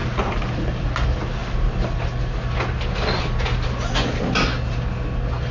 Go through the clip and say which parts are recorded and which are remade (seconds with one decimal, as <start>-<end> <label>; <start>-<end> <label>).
0.0-5.5 recorded